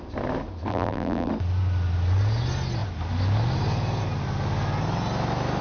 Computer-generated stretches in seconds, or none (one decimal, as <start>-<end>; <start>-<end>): 0.7-1.3